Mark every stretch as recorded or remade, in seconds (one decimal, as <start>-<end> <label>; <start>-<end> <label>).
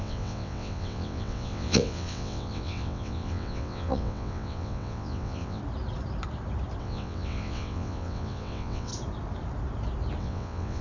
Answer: 0.0-5.6 remade; 5.6-6.8 recorded; 6.8-8.9 remade; 8.9-10.2 recorded; 10.2-10.8 remade